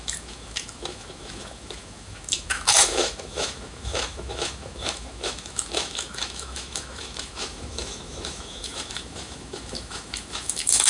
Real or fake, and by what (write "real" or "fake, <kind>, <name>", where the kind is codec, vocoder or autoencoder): fake, autoencoder, DAC-VAE